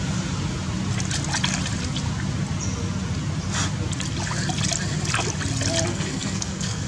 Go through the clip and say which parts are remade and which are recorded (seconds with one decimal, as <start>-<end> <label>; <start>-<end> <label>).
0.0-5.9 recorded; 5.9-6.9 remade

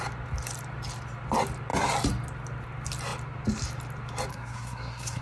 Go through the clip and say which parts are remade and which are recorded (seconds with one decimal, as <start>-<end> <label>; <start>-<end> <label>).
0.0-4.3 recorded; 4.3-5.2 remade

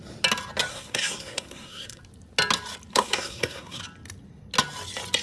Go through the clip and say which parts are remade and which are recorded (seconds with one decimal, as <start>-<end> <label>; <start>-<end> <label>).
0.0-0.7 recorded; 0.7-2.0 remade; 2.0-2.9 recorded; 2.9-3.8 remade; 3.8-5.2 recorded

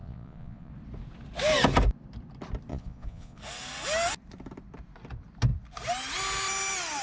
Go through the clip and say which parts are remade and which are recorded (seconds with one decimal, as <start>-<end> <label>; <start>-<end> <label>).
0.0-0.7 remade; 0.7-2.7 recorded; 2.7-3.4 remade; 3.4-7.0 recorded

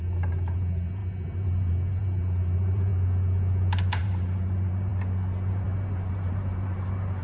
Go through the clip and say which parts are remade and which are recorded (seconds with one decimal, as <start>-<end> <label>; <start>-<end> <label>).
0.0-2.9 remade; 2.9-4.0 recorded; 4.0-4.9 remade; 4.9-5.5 recorded; 5.5-7.2 remade

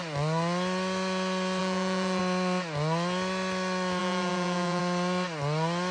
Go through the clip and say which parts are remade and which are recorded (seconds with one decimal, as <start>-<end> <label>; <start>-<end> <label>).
0.0-1.6 recorded; 1.6-2.2 remade; 2.2-4.0 recorded; 4.0-4.8 remade; 4.8-5.9 recorded